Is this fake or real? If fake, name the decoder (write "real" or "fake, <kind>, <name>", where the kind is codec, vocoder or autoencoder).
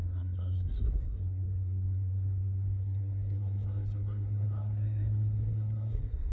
fake, codec, SNAC